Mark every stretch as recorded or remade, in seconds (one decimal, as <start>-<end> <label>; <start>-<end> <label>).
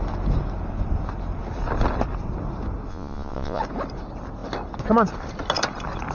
0.0-2.9 recorded; 2.9-3.6 remade; 3.6-6.1 recorded